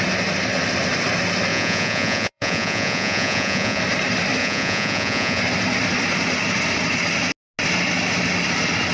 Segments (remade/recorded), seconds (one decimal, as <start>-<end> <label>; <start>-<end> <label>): 0.0-1.5 recorded; 1.5-3.8 remade; 3.8-4.4 recorded; 4.4-5.4 remade; 5.4-8.9 recorded